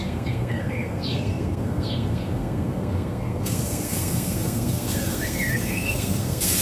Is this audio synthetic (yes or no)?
yes